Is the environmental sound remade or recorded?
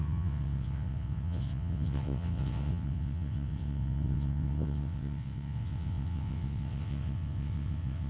remade